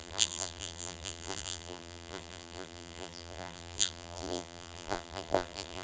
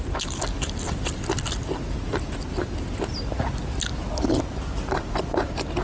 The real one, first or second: second